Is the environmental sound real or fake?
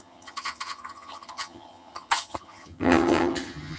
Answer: fake